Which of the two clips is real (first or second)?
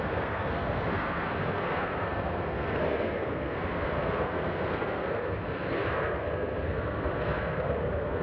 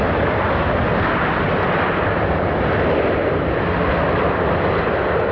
second